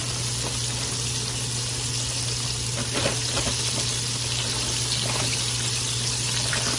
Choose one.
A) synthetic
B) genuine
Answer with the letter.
B